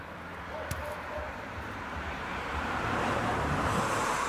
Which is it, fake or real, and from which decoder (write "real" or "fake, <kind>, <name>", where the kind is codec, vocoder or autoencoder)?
fake, vocoder, BigVGAN v2